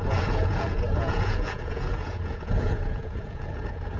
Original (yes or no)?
no